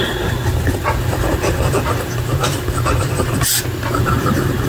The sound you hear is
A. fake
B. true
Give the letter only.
B